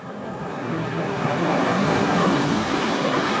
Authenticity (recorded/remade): remade